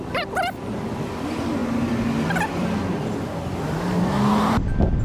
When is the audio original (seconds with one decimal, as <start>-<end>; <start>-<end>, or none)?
0.0-5.0